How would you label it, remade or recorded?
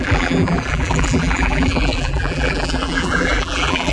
remade